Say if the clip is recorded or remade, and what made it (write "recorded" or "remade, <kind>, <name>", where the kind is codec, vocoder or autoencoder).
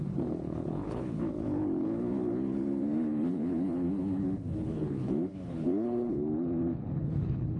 remade, codec, HILCodec